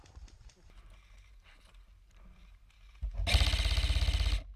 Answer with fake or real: real